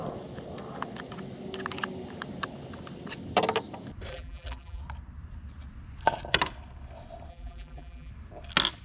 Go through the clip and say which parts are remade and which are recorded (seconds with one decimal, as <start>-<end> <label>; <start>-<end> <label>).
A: 0.0-4.1 recorded; 4.1-4.8 remade; 4.8-7.3 recorded; 7.3-8.1 remade; 8.1-8.8 recorded